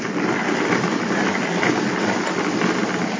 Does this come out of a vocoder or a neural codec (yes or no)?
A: no